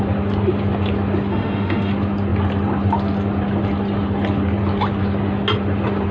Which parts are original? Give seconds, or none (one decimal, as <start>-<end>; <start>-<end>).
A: 0.0-1.3; 1.9-6.1